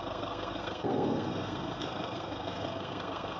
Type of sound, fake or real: fake